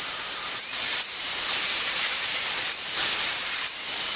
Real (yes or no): no